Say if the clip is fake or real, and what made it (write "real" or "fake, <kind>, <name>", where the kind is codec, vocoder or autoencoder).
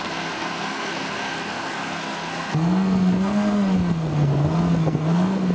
fake, codec, SNAC